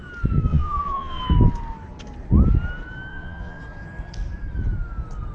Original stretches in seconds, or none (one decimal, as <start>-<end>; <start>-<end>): 0.0-0.5; 1.2-3.1; 3.6-5.3